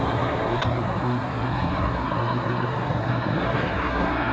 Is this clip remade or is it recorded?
remade